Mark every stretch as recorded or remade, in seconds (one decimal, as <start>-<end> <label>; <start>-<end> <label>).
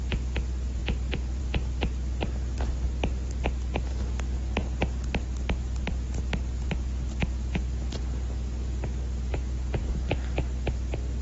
0.0-11.2 recorded